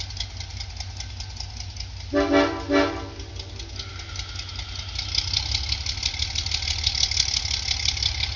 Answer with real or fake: real